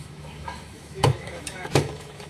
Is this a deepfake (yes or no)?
yes